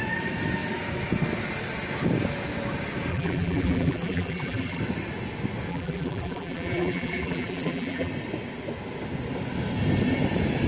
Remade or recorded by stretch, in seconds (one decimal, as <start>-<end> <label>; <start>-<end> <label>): 0.0-3.1 recorded; 3.1-4.8 remade; 4.8-5.7 recorded; 5.7-8.1 remade; 8.1-10.7 recorded